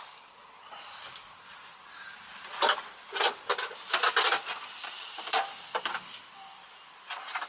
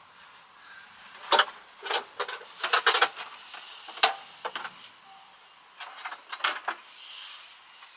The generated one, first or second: first